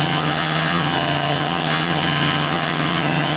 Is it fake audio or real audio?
fake